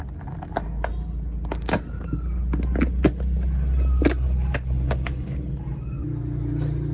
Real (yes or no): yes